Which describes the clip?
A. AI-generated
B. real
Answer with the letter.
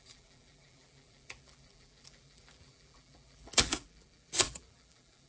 A